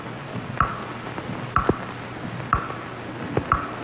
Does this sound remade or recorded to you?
recorded